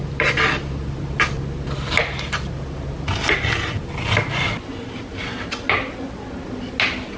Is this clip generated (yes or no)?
no